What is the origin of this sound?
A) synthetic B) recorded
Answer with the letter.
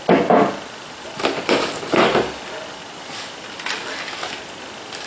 B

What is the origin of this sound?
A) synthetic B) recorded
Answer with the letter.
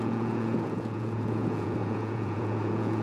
A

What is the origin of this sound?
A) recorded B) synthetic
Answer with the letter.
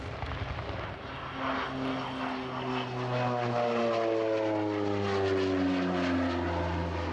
A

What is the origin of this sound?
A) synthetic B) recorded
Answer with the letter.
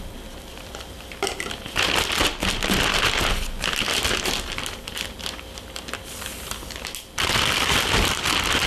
A